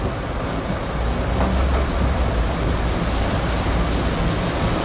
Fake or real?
real